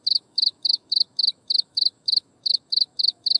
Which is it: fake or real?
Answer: fake